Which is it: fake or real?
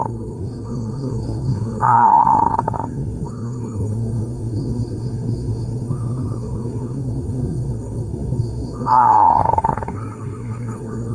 fake